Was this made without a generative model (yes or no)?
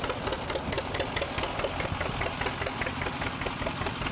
yes